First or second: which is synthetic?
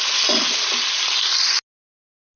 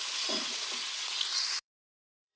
second